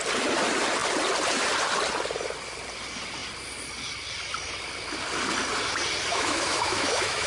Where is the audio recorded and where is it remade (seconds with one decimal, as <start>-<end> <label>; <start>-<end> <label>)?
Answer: 0.0-6.1 recorded; 6.1-7.3 remade